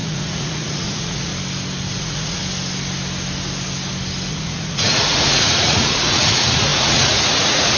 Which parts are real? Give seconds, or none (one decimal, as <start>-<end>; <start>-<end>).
1.3-2.0; 2.4-4.3